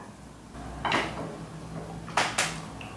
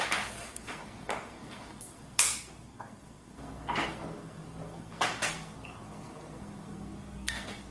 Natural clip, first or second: first